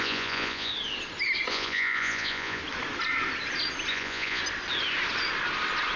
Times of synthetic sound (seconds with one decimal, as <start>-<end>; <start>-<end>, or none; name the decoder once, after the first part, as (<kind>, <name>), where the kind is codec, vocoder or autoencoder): 0.0-0.7 (vocoder, Vocos); 1.5-2.6; 3.9-4.4